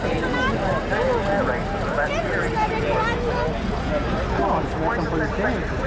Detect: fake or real real